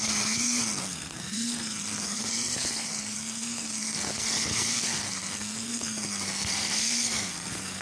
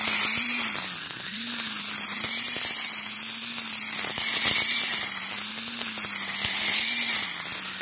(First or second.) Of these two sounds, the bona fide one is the second